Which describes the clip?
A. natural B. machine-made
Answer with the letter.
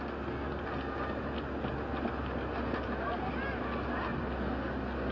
A